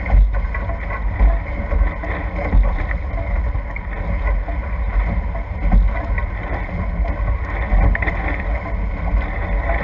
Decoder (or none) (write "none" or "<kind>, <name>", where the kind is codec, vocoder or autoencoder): none